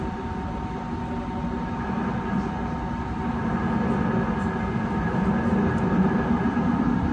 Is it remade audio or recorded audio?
recorded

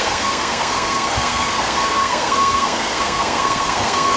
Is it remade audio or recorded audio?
remade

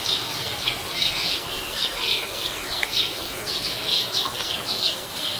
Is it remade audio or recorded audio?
remade